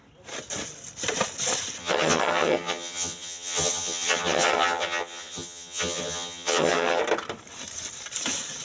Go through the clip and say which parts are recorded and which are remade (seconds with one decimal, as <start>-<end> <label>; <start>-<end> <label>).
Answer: 0.0-1.8 recorded; 1.8-7.0 remade; 7.0-8.6 recorded